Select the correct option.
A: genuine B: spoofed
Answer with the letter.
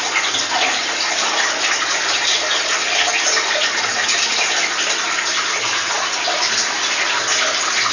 A